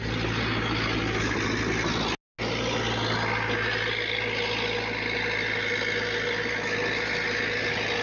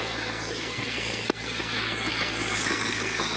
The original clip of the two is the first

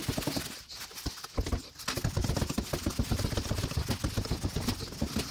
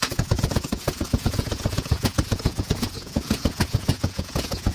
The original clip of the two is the first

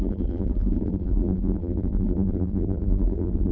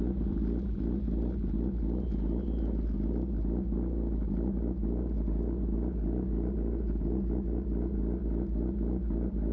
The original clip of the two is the second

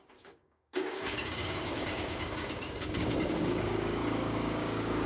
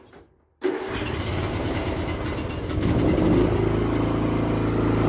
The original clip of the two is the second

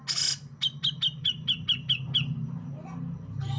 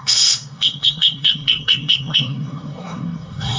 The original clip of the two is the first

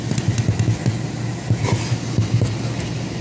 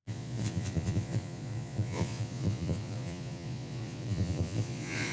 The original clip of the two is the first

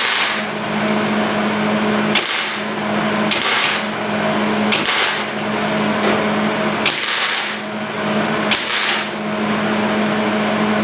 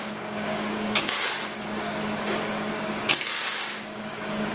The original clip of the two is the first